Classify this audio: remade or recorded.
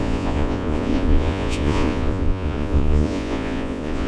remade